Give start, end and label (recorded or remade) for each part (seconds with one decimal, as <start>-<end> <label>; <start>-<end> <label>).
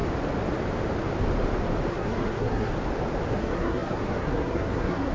0.0-1.9 recorded; 1.9-2.7 remade; 2.7-3.3 recorded; 3.3-5.1 remade